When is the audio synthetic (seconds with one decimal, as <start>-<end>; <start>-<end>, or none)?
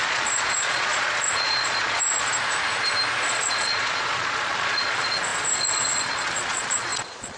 0.0-2.3; 3.3-7.4